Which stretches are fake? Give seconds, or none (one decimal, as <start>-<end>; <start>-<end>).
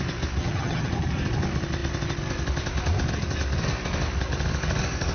0.4-0.9